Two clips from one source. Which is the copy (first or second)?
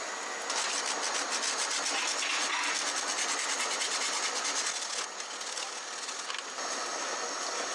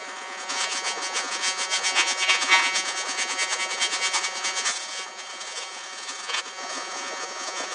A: second